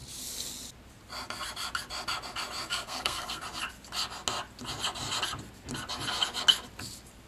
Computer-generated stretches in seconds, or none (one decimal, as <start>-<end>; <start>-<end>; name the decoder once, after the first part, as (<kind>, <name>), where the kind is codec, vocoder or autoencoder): 2.7-3.4 (codec, SNAC)